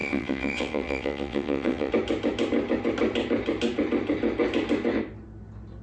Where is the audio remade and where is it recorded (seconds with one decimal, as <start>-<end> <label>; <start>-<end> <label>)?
0.0-1.9 remade; 1.9-5.8 recorded